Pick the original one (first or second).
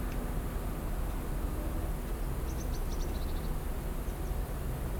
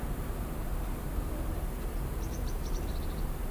first